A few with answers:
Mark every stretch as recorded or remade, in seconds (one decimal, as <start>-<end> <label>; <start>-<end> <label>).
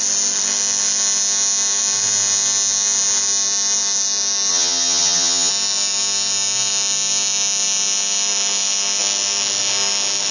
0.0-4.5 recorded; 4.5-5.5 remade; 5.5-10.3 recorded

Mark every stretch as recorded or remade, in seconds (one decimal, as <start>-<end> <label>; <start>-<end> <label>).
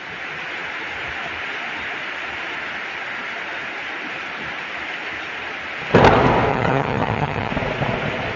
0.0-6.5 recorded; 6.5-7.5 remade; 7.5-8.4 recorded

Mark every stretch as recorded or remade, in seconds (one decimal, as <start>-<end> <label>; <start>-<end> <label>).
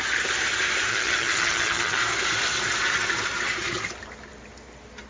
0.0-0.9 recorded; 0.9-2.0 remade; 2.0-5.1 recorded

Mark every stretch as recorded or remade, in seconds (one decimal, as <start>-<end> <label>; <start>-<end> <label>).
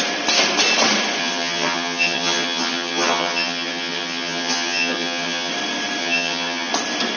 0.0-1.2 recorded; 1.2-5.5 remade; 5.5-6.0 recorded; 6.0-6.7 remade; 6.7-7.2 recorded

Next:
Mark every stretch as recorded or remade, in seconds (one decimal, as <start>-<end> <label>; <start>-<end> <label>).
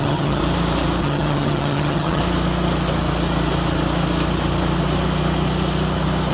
0.0-0.4 remade; 0.4-1.0 recorded; 1.0-2.2 remade; 2.2-6.3 recorded